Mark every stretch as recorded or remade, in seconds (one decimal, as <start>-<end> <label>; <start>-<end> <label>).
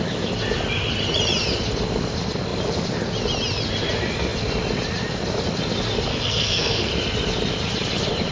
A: 0.0-6.1 recorded; 6.1-6.9 remade; 6.9-8.3 recorded